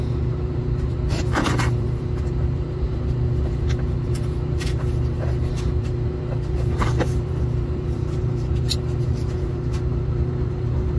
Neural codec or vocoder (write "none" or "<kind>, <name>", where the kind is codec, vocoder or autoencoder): vocoder, BigVGAN v2